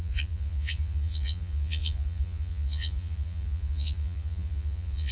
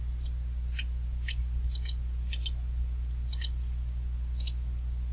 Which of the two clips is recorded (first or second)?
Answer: second